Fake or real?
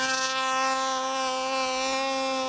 real